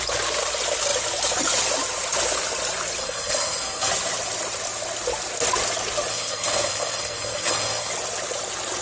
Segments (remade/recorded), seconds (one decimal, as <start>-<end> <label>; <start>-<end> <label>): 0.0-3.0 recorded; 3.0-3.9 remade; 3.9-6.1 recorded; 6.1-7.9 remade; 7.9-8.8 recorded